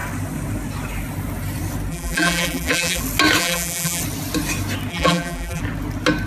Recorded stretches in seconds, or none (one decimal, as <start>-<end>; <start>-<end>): 0.0-1.9; 3.0-3.4; 4.0-4.9; 5.6-6.3